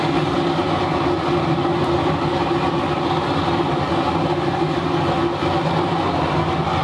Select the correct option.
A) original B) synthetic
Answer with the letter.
A